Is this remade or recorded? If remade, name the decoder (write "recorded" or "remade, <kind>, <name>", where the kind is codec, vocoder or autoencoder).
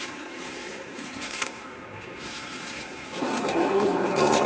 remade, codec, SNAC